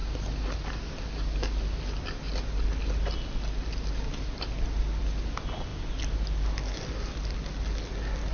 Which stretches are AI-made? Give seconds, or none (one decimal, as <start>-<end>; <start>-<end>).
none